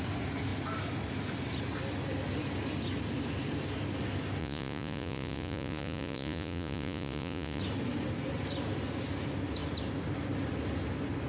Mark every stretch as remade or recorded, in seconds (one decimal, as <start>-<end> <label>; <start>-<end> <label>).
0.0-4.4 recorded; 4.4-7.6 remade; 7.6-11.3 recorded